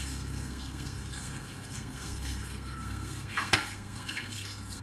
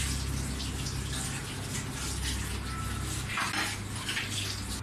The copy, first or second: first